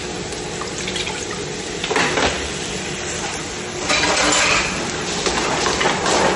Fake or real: real